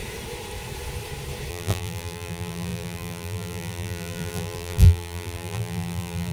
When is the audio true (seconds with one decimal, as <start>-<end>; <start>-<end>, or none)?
0.0-1.5